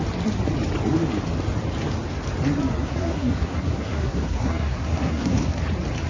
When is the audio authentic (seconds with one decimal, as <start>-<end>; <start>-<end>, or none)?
0.0-2.8; 5.6-6.1